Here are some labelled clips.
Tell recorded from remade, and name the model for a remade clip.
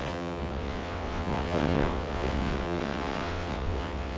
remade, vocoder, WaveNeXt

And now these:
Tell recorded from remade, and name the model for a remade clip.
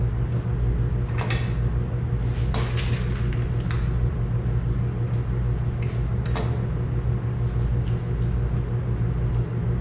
recorded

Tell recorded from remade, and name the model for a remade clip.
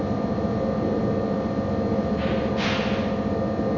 recorded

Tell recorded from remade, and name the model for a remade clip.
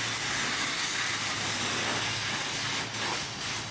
recorded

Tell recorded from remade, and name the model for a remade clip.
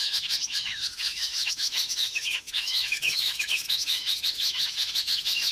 remade, autoencoder, DAC-VAE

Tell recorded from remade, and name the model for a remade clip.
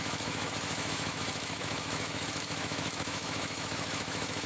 remade, autoencoder, DAC-VAE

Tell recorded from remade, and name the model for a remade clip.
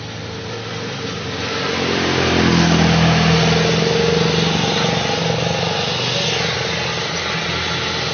recorded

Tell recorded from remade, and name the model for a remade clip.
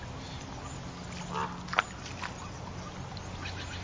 recorded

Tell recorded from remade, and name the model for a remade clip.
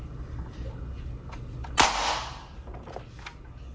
recorded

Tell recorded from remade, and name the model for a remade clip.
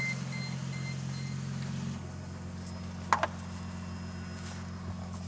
recorded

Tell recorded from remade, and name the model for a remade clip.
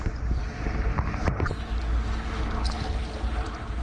recorded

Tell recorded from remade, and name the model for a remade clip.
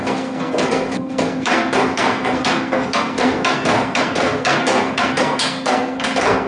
remade, codec, SNAC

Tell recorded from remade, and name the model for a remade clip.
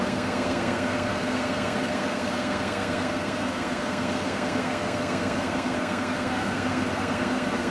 remade, codec, SNAC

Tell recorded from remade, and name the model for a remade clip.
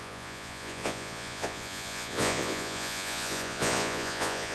remade, vocoder, Vocos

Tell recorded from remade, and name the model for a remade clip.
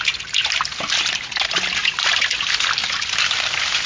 recorded